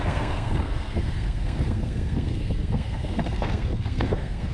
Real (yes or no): no